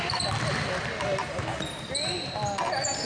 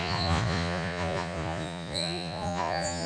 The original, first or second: first